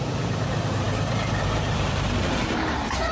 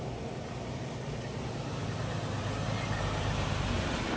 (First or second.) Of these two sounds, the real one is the second